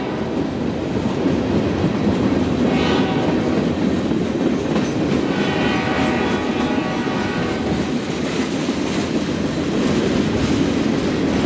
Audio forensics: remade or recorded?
recorded